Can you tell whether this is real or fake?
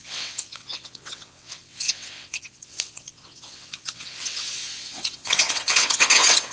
fake